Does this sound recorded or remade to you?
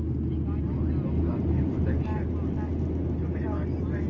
recorded